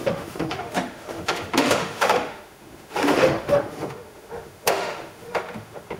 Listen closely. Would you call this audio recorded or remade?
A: remade